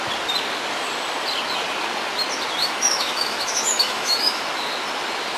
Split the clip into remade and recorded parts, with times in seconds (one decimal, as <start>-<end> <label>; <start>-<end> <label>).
0.0-2.6 recorded; 2.6-4.4 remade; 4.4-5.4 recorded